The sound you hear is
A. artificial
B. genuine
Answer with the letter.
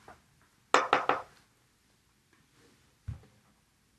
B